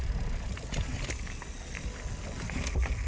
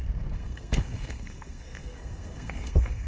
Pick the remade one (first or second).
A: second